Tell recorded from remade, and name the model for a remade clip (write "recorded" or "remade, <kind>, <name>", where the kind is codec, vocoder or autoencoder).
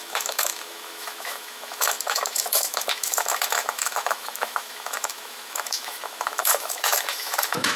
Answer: remade, autoencoder, DAC-VAE